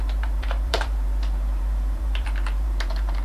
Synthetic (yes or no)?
yes